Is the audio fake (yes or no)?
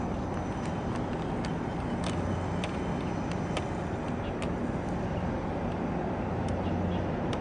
no